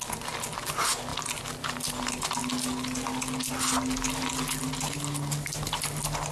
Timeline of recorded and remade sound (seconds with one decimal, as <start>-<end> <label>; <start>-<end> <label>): 0.0-6.3 recorded